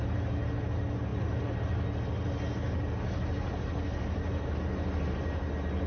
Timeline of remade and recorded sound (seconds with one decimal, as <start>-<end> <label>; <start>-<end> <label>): 0.0-5.9 recorded